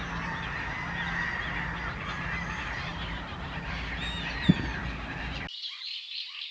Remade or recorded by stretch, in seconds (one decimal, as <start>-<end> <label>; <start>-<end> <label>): 0.0-6.5 recorded